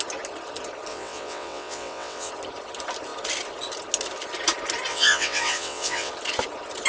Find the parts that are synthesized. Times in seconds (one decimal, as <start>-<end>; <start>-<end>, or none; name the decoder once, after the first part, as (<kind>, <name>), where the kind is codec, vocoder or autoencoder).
0.9-2.3 (vocoder, WaveNeXt); 4.9-6.1